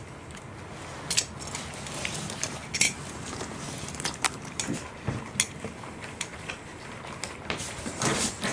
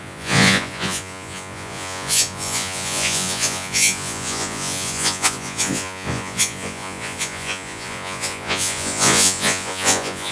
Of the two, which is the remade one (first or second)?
second